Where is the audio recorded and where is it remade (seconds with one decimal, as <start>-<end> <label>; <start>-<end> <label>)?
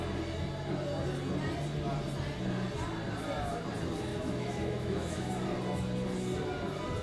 0.0-4.1 recorded; 4.1-5.3 remade; 5.3-7.0 recorded